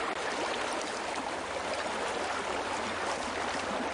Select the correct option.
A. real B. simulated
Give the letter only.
A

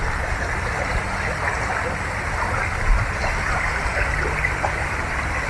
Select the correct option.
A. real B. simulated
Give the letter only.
A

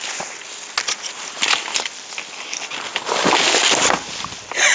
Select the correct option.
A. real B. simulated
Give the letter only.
A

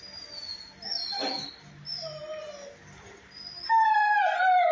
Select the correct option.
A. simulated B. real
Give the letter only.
B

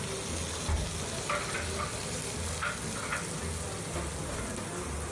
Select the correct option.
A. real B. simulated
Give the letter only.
A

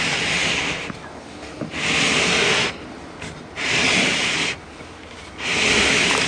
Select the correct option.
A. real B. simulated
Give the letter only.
A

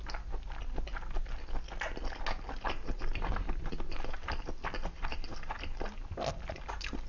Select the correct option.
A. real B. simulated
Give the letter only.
A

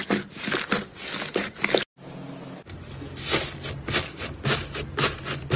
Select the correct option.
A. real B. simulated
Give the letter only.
A